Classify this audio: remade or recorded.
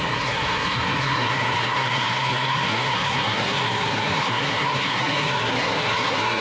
remade